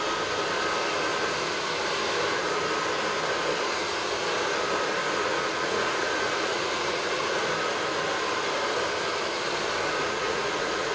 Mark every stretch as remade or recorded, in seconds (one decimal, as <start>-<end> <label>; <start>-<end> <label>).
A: 0.0-5.0 recorded; 5.0-7.5 remade; 7.5-10.0 recorded; 10.0-10.9 remade